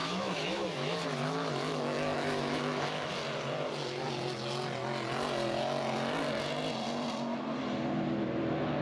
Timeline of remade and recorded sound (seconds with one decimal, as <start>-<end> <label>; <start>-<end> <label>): 0.0-3.1 remade; 3.1-8.8 recorded